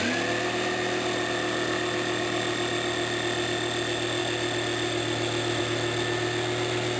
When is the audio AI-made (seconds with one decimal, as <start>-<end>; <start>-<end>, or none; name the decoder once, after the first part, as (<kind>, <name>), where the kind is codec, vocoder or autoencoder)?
none